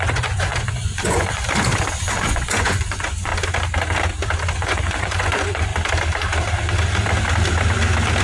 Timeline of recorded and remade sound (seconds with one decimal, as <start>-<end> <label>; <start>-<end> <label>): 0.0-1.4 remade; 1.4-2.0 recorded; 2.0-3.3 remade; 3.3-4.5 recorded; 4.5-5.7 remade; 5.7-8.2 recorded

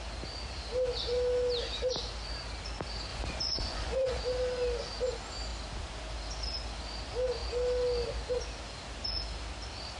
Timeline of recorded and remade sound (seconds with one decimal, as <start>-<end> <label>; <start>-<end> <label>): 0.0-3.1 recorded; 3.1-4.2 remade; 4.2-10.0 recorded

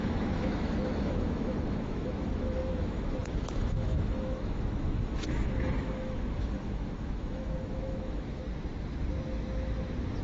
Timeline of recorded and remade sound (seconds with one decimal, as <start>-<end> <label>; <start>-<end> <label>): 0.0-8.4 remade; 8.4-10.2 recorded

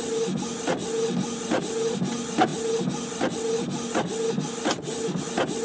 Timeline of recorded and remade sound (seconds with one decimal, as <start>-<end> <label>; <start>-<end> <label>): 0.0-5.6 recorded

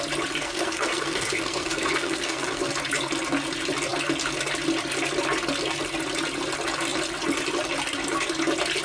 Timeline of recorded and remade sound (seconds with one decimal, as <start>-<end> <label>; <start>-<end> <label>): 0.0-0.4 recorded; 0.4-2.7 remade; 2.7-8.8 recorded

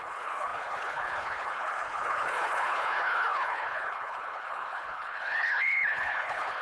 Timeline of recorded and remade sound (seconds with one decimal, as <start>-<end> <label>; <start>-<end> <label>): 0.0-6.6 remade

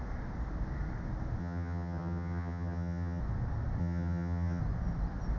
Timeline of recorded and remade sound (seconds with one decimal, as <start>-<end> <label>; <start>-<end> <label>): 0.0-1.4 recorded; 1.4-3.2 remade; 3.2-3.8 recorded; 3.8-4.6 remade; 4.6-5.4 recorded

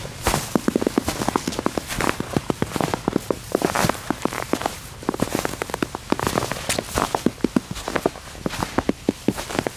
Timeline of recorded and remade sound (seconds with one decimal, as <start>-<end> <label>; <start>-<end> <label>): 0.0-1.5 recorded; 1.5-5.7 remade; 5.7-9.8 recorded